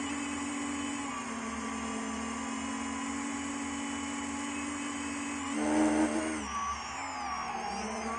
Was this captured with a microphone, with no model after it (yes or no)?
yes